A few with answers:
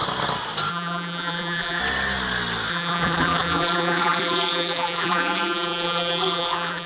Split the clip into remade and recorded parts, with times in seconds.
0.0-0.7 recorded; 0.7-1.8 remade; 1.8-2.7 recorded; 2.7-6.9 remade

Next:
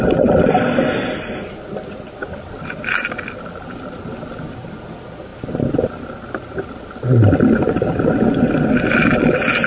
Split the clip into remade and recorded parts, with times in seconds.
0.0-9.7 recorded

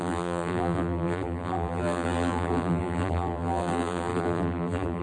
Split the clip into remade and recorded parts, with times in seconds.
0.0-5.0 remade

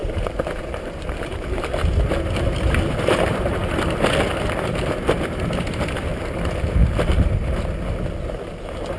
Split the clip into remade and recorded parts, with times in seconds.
0.0-3.7 remade; 3.7-6.8 recorded; 6.8-7.7 remade; 7.7-9.0 recorded